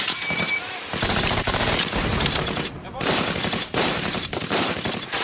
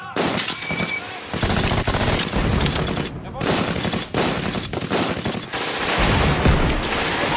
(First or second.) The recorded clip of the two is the second